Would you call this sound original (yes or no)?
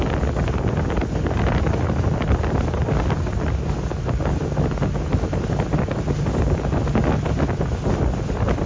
yes